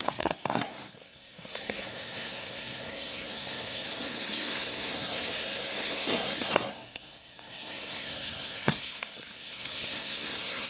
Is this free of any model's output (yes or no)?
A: no